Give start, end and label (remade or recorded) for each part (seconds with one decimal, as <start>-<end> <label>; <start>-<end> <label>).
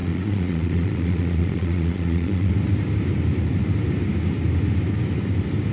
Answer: 0.0-2.5 remade; 2.5-5.7 recorded